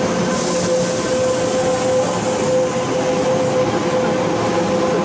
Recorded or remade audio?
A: recorded